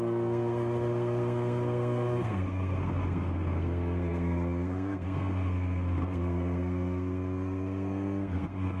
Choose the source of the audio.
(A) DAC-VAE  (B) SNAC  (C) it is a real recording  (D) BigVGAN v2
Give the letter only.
B